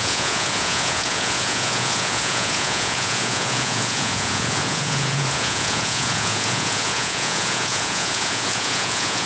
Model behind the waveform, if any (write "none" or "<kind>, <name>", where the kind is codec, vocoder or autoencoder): vocoder, Vocos